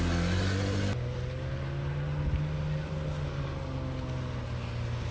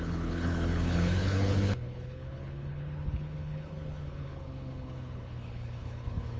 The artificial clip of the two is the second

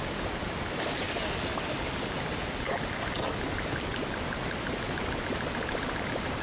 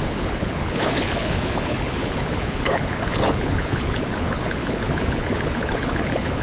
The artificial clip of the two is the second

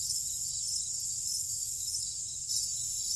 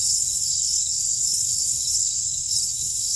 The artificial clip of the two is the second